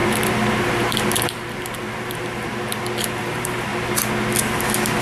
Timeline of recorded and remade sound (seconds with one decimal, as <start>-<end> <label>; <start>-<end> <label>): 0.0-2.5 remade; 2.5-3.2 recorded; 3.2-3.7 remade; 3.7-5.0 recorded